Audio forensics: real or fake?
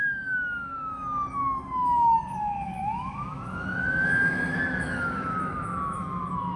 fake